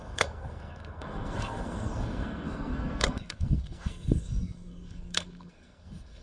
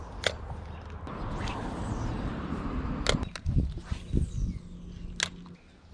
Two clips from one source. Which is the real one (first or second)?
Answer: second